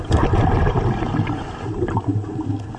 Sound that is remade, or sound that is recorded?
recorded